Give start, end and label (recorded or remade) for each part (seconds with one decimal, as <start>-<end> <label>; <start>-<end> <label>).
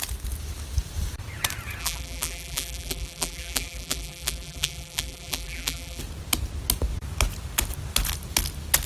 0.0-1.8 recorded; 1.8-6.0 remade; 6.0-8.9 recorded